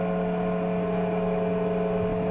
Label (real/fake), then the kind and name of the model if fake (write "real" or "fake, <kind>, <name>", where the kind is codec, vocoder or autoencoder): real